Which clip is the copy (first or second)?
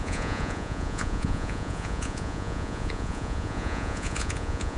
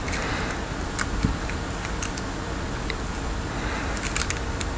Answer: first